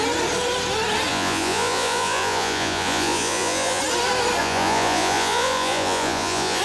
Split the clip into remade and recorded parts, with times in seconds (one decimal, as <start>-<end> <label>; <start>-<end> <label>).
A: 0.0-1.1 recorded; 1.1-3.8 remade; 3.8-4.4 recorded; 4.4-6.6 remade